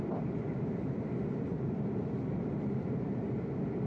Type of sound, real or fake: real